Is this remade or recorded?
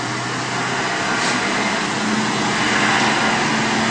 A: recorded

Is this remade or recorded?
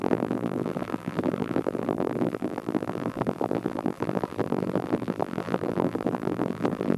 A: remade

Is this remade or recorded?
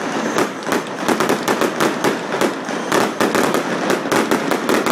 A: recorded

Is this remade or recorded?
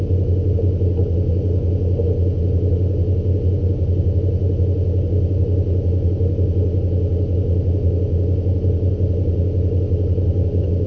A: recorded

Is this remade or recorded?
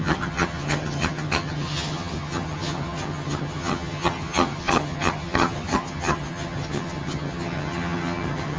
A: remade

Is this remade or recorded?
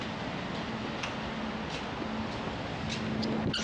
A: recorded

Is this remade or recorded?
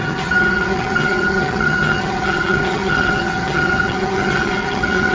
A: remade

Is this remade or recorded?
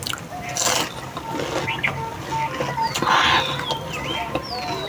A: recorded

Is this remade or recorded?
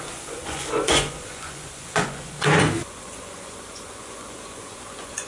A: remade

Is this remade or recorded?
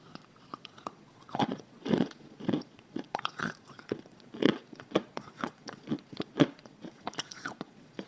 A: remade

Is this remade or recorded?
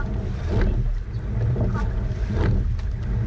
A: recorded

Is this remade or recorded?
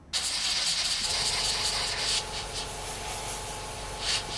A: recorded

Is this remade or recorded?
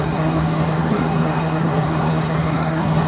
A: remade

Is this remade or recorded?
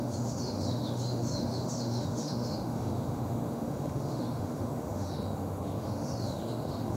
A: remade